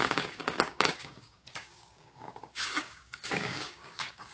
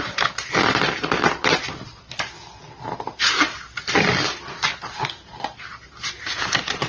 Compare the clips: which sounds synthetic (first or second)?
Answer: first